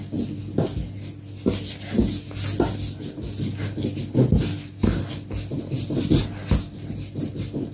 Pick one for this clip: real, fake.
real